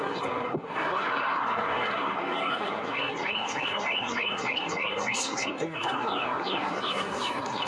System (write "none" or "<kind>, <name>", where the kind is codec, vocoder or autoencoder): codec, SNAC